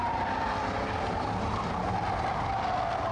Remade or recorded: recorded